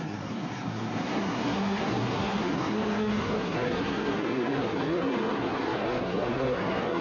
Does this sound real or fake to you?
fake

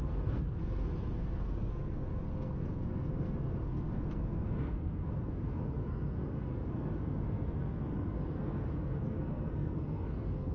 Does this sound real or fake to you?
fake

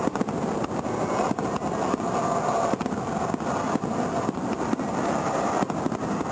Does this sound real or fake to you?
real